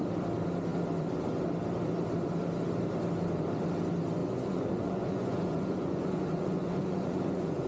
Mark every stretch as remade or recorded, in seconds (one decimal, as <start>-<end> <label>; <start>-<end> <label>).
0.0-4.2 recorded; 4.2-7.7 remade